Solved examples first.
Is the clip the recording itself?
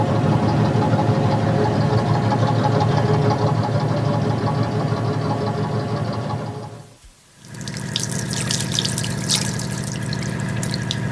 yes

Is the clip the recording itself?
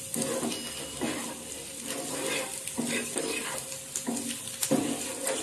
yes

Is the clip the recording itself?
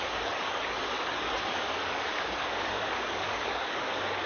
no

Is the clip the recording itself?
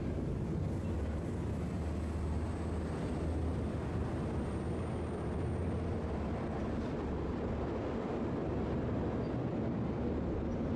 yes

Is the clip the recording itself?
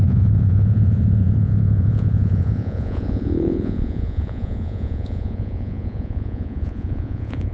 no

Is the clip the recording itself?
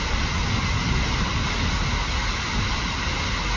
yes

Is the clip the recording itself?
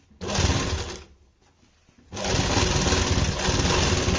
yes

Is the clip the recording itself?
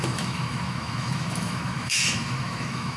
no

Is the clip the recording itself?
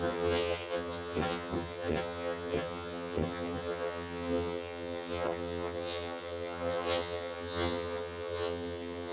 no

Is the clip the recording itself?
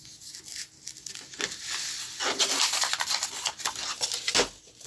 yes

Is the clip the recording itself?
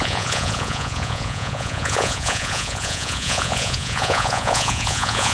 no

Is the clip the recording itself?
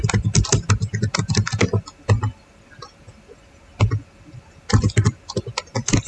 yes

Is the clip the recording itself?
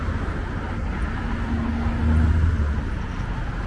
yes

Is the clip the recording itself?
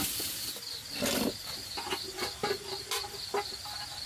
yes